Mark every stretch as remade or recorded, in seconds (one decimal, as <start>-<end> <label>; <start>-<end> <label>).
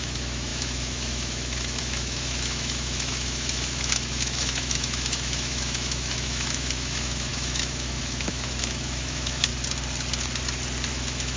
0.0-9.5 remade; 9.5-10.9 recorded; 10.9-11.4 remade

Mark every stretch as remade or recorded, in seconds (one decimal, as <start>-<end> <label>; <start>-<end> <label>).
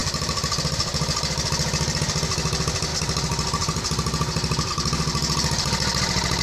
0.0-6.4 recorded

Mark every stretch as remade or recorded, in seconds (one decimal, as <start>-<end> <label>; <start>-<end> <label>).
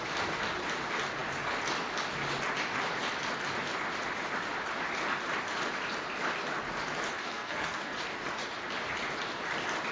0.0-7.1 recorded; 7.1-8.0 remade; 8.0-9.9 recorded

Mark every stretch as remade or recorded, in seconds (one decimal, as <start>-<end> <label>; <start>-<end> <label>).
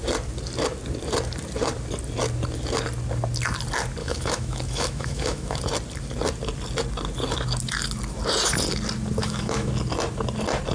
0.0-4.0 recorded; 4.0-5.6 remade; 5.6-9.2 recorded; 9.2-9.7 remade; 9.7-10.7 recorded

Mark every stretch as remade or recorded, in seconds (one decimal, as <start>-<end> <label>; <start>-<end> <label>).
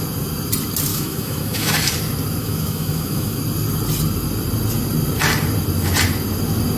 0.0-0.9 recorded; 0.9-1.7 remade; 1.7-2.4 recorded; 2.4-3.4 remade; 3.4-6.8 recorded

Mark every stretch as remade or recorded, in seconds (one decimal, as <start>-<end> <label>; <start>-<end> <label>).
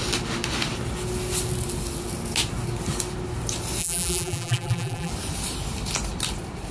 0.0-3.8 recorded; 3.8-5.1 remade; 5.1-6.7 recorded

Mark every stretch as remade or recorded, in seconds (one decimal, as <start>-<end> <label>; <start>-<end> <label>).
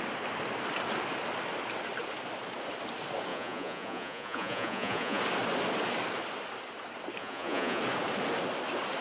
0.0-3.3 recorded; 3.3-5.2 remade; 5.2-7.2 recorded; 7.2-7.8 remade; 7.8-9.0 recorded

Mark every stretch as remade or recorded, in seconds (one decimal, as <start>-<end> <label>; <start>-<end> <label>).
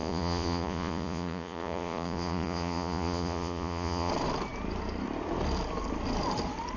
0.0-4.1 remade; 4.1-6.8 recorded